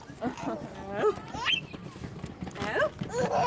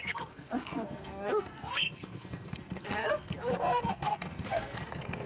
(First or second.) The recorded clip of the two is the first